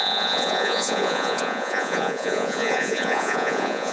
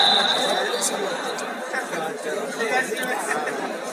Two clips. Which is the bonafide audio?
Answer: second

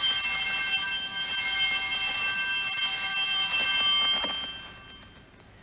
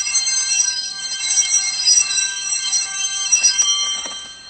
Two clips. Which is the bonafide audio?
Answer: first